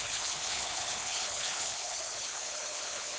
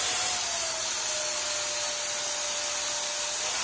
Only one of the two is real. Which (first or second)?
second